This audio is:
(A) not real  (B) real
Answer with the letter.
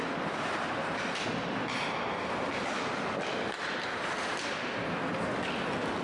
B